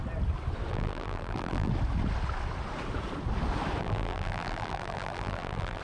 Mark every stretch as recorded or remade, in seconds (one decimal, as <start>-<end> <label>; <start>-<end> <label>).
0.0-0.7 recorded; 0.7-1.7 remade; 1.7-3.8 recorded; 3.8-5.8 remade